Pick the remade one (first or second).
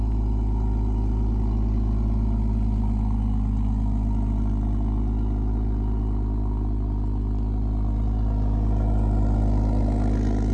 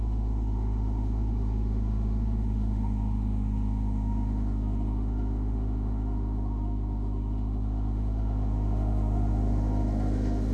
second